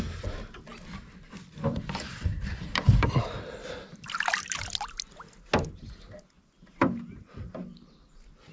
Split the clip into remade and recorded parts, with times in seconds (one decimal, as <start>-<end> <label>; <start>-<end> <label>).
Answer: 0.0-0.7 recorded; 0.7-4.6 remade; 4.6-8.5 recorded